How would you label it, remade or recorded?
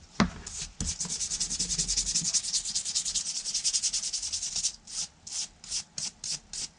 recorded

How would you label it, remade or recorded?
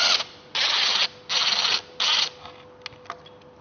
recorded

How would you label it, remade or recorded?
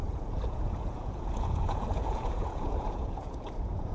remade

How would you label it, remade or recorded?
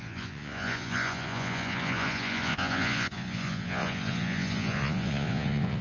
remade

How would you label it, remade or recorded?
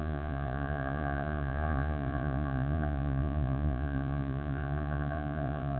remade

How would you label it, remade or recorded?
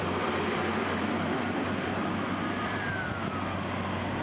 recorded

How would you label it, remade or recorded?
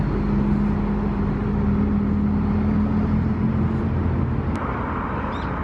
recorded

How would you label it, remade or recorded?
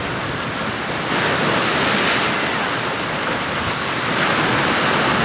recorded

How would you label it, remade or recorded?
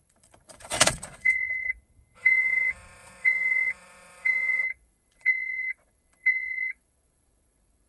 remade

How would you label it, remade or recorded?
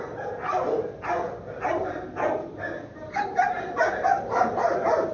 recorded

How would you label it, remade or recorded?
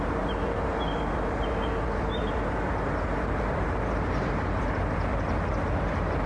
recorded